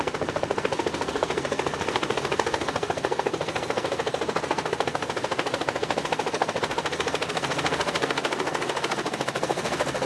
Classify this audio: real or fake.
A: fake